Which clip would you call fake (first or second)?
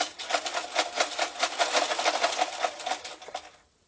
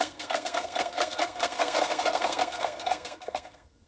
second